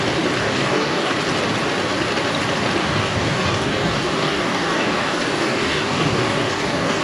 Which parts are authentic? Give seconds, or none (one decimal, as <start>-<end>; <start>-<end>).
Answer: 0.0-0.4; 1.1-2.8

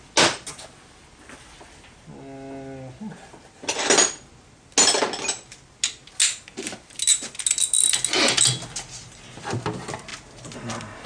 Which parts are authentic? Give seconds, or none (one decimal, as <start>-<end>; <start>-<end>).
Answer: 0.0-11.1

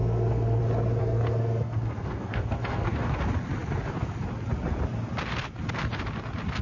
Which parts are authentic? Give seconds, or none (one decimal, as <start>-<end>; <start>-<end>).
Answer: 0.6-1.0; 3.2-6.6

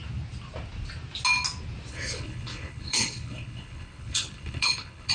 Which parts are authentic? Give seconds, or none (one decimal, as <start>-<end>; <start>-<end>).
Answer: 0.0-1.9

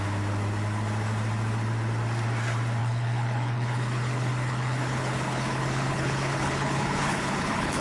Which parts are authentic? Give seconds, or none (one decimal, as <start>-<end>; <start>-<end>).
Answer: 0.0-2.8

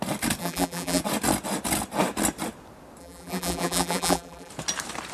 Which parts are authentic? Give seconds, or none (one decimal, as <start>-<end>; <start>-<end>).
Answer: 0.0-0.4; 1.0-3.0; 4.5-5.1

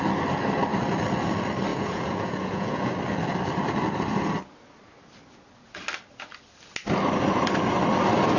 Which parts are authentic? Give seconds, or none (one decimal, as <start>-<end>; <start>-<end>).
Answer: 0.0-1.7; 2.9-8.4